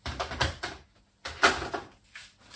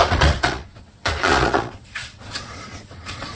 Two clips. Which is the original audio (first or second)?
first